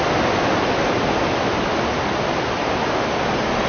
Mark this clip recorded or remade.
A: recorded